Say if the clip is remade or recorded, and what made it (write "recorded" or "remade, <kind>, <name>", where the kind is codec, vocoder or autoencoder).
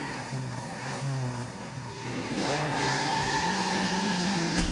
remade, codec, SNAC